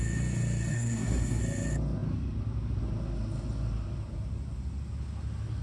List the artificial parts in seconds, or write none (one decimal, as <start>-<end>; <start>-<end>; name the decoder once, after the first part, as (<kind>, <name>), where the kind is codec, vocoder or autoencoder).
0.7-1.4 (codec, SNAC)